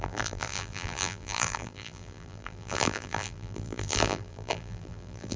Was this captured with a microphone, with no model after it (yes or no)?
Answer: no